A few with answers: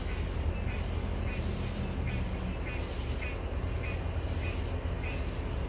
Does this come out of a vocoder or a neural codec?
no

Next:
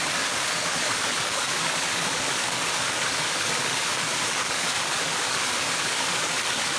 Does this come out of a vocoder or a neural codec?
yes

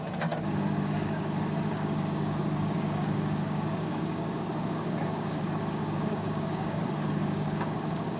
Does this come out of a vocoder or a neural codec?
yes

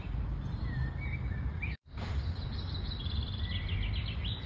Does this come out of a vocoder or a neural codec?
no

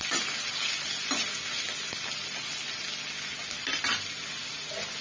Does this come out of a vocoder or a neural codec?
no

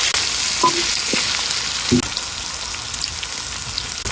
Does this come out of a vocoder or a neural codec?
no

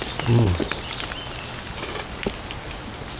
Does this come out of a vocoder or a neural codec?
no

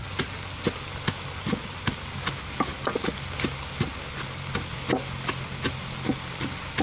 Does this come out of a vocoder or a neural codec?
no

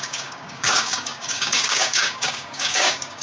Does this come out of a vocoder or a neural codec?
yes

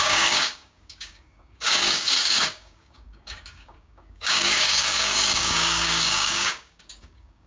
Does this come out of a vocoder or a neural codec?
yes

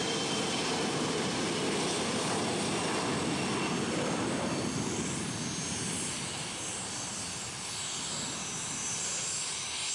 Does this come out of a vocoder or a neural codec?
no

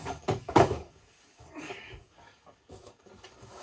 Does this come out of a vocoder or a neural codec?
yes